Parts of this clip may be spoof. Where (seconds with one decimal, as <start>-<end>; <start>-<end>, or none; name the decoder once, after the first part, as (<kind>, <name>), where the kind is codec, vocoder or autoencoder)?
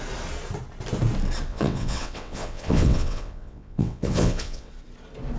1.5-4.7 (vocoder, WaveNeXt)